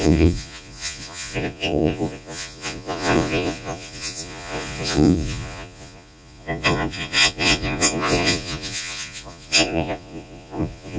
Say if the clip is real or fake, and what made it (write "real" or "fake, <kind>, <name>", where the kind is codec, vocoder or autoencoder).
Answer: fake, vocoder, Vocos